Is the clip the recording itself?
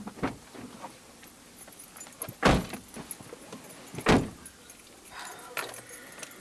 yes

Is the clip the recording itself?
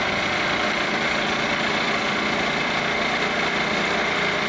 yes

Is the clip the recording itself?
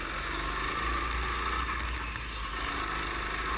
yes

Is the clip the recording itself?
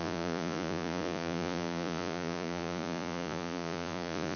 no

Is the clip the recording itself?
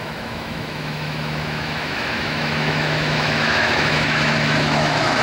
no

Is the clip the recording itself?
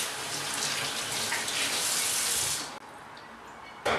yes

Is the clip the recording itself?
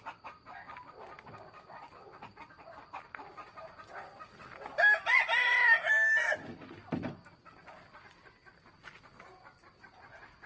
yes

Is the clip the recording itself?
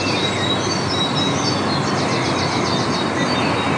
yes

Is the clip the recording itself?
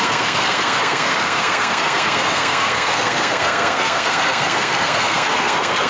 no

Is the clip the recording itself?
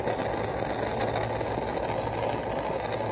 yes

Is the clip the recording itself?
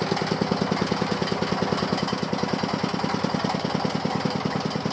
yes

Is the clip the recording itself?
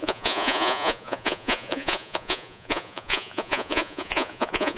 no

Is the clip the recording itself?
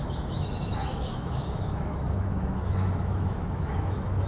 no